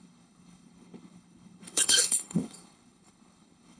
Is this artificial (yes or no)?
yes